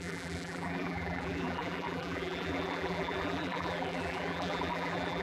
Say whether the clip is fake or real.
fake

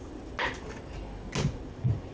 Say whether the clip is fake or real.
real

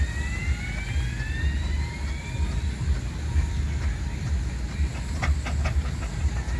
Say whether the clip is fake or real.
real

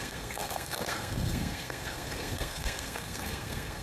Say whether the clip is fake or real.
fake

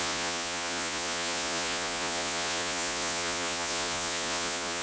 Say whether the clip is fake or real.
fake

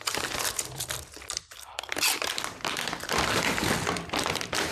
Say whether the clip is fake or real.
fake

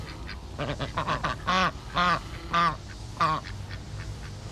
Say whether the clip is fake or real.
real